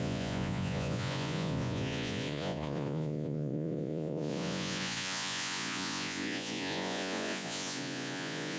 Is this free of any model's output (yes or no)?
no